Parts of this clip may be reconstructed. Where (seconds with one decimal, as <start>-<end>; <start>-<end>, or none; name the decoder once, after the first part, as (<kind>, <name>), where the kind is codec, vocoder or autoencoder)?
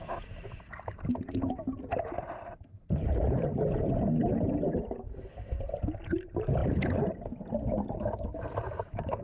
none